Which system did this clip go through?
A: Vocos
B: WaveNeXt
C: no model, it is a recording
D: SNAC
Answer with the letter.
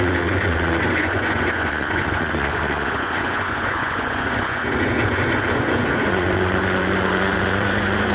A